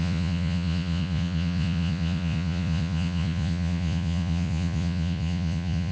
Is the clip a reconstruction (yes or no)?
yes